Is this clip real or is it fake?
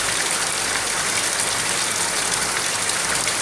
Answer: real